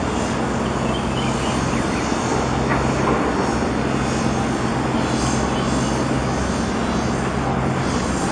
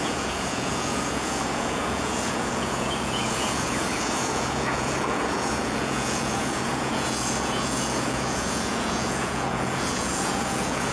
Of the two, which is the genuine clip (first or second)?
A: first